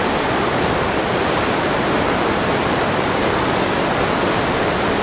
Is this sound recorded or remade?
recorded